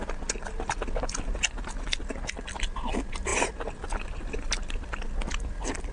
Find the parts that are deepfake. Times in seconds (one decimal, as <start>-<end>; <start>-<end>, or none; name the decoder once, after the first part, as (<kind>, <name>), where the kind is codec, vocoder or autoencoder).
none